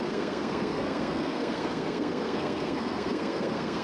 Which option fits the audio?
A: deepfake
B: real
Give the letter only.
A